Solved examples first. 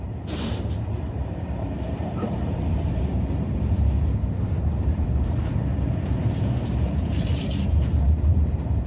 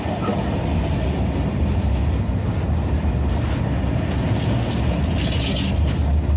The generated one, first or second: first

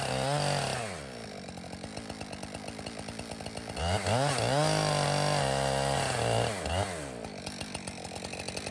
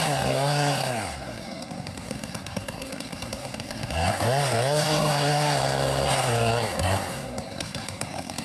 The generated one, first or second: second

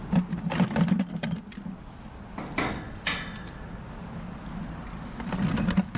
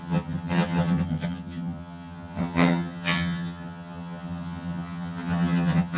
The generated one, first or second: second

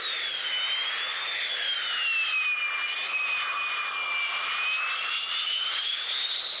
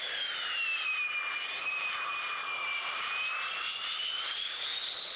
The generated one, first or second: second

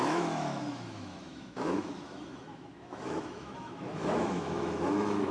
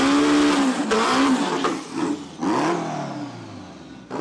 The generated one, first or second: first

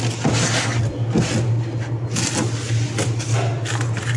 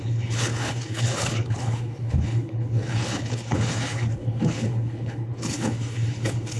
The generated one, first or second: second